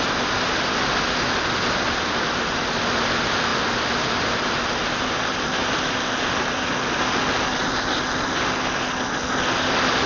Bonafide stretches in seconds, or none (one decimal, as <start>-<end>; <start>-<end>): 0.0-10.1